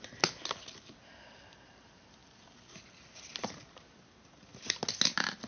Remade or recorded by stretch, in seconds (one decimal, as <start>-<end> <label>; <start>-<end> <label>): 0.0-5.5 recorded